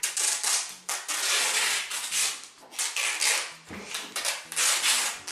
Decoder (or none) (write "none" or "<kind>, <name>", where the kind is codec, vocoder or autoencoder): none